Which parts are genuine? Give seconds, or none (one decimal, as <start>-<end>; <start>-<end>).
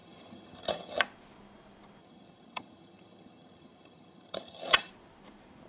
1.0-2.0; 4.9-5.7